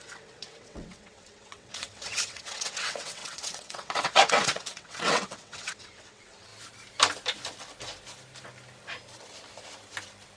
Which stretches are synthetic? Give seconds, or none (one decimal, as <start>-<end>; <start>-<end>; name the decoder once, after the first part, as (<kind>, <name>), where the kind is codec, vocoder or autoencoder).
0.0-6.5 (vocoder, WaveNeXt)